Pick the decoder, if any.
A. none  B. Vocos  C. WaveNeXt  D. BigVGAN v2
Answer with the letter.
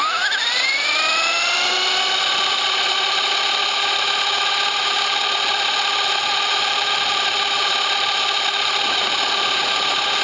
A